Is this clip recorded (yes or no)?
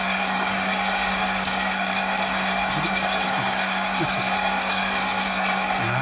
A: no